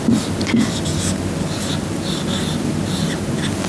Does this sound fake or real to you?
real